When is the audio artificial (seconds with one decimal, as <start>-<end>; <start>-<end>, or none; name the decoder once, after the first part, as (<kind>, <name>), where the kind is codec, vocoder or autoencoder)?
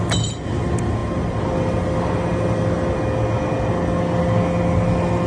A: none